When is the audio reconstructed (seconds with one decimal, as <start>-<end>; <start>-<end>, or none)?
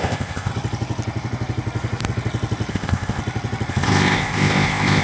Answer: 0.0-0.5; 2.7-3.2; 3.7-5.0